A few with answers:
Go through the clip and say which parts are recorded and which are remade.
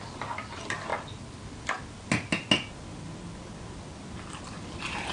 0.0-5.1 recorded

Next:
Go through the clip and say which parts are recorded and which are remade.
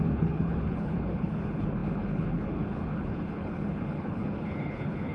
0.0-5.1 remade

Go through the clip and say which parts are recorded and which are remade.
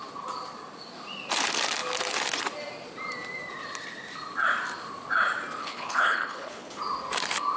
0.0-5.6 recorded; 5.6-6.8 remade; 6.8-7.6 recorded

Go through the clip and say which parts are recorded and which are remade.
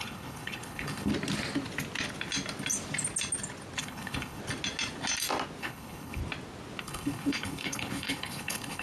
0.0-1.1 remade; 1.1-3.8 recorded; 3.8-4.4 remade; 4.4-5.6 recorded; 5.6-6.2 remade; 6.2-6.8 recorded; 6.8-8.8 remade